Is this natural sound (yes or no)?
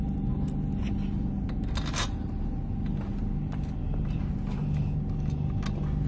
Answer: yes